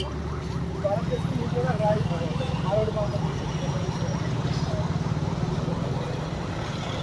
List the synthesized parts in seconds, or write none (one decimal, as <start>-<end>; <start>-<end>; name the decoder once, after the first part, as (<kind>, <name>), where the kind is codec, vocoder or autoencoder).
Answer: 1.6-2.4 (autoencoder, DAC-VAE)